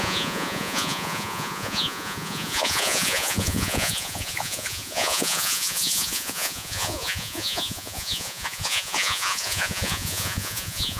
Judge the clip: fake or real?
fake